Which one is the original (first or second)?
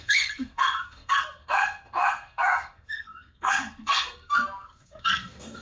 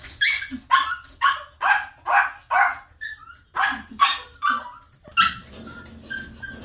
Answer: second